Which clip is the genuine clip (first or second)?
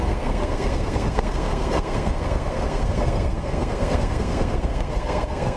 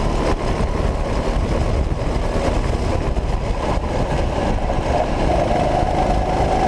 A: second